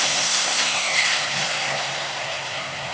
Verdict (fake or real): fake